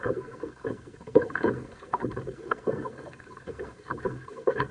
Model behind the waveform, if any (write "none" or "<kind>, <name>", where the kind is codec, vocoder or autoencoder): codec, SNAC